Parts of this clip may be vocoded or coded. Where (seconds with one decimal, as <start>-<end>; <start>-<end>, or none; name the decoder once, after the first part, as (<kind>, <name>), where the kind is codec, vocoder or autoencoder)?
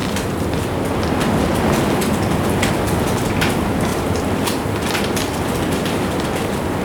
3.9-4.9 (vocoder, BigVGAN v2)